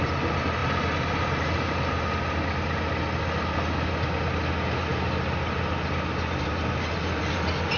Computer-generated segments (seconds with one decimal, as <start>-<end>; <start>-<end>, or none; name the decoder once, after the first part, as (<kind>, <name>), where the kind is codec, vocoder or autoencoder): none